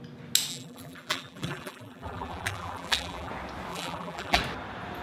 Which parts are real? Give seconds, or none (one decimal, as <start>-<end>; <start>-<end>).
0.0-0.5; 3.3-3.7; 4.4-5.0